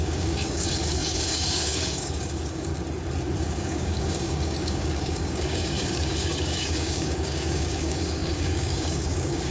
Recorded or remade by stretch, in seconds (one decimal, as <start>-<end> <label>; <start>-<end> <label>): 0.0-2.7 remade; 2.7-3.4 recorded; 3.4-9.5 remade